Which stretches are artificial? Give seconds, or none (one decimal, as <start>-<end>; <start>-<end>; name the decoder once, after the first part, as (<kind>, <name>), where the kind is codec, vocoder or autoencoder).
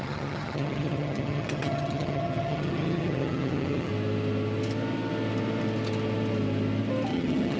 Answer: 0.0-3.9 (vocoder, HiFi-GAN); 7.1-7.6